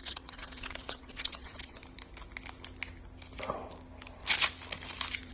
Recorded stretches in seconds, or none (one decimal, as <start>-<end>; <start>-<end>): 1.8-5.3